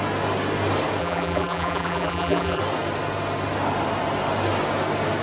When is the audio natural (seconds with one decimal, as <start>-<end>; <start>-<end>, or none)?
0.0-1.0; 2.6-5.2